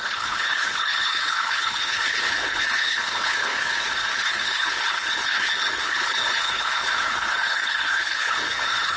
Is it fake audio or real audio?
fake